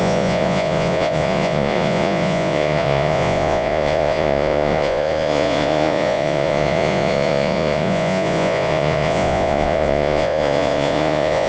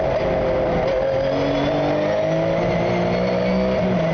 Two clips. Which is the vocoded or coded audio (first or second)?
first